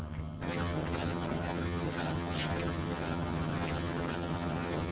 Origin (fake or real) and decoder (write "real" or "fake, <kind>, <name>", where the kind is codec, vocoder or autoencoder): fake, vocoder, HiFi-GAN